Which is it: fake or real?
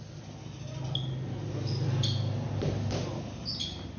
real